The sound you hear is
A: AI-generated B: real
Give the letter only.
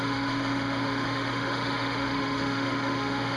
A